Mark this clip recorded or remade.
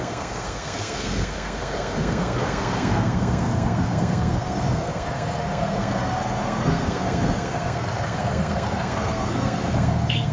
remade